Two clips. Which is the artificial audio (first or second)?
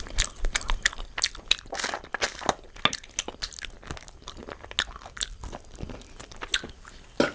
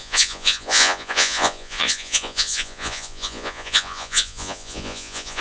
second